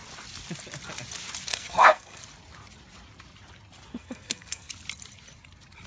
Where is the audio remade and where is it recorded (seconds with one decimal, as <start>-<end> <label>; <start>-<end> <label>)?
0.0-1.5 recorded; 1.5-2.2 remade; 2.2-3.9 recorded; 3.9-4.7 remade; 4.7-5.9 recorded